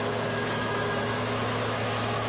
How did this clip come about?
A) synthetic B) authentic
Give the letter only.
A